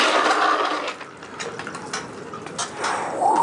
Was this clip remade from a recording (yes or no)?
no